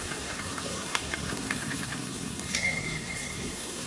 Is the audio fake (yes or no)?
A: yes